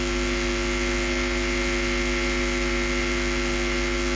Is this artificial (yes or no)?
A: no